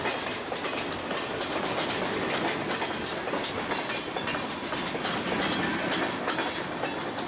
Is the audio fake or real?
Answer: real